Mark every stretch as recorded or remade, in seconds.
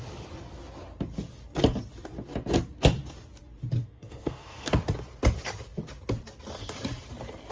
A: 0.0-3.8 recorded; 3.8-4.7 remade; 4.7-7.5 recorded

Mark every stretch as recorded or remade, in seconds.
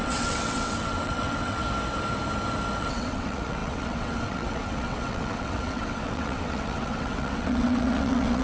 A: 0.0-1.6 remade; 1.6-2.8 recorded; 2.8-8.4 remade